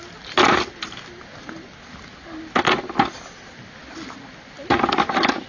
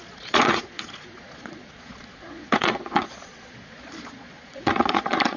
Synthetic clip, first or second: second